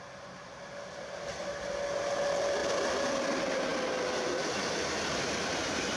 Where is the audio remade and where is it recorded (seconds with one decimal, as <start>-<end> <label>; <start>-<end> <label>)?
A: 0.0-6.0 recorded